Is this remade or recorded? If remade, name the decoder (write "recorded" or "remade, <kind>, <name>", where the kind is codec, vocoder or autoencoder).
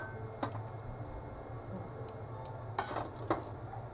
recorded